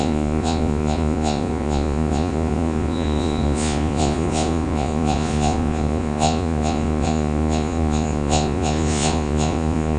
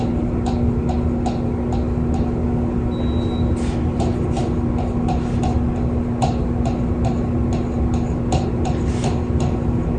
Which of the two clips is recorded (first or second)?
second